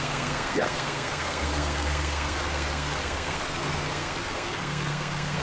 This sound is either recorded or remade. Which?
remade